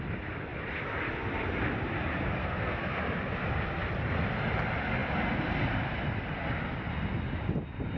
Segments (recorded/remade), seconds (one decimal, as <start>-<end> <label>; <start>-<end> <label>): 0.0-2.4 recorded; 2.4-3.0 remade; 3.0-8.0 recorded